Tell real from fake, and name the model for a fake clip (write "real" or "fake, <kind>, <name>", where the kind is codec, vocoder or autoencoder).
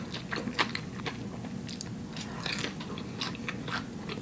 real